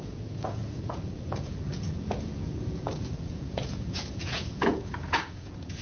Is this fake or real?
fake